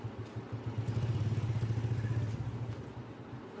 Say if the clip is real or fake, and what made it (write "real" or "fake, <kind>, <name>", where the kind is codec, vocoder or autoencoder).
real